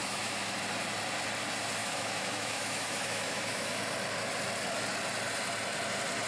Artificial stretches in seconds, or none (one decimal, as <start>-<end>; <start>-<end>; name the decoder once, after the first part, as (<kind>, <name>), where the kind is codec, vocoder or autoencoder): 0.0-0.6 (autoencoder, DAC-VAE); 1.8-3.8